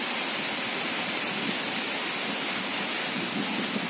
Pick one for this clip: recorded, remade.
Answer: recorded